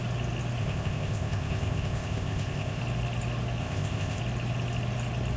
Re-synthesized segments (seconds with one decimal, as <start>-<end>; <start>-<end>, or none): 0.6-2.8; 3.6-4.2